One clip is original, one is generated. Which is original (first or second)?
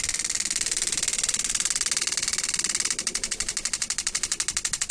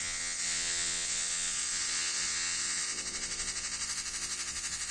first